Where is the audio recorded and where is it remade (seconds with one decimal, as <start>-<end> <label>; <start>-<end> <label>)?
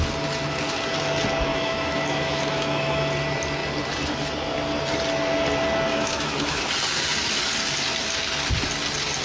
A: 0.0-1.5 recorded; 1.5-3.0 remade; 3.0-5.9 recorded; 5.9-6.7 remade; 6.7-9.2 recorded